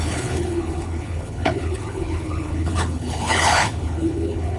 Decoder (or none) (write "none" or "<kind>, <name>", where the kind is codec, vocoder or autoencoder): codec, HILCodec